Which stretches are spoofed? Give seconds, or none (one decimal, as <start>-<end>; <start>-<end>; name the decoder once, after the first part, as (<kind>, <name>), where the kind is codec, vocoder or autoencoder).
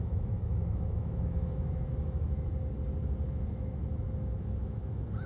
0.0-2.5 (autoencoder, DAC-VAE); 3.5-5.3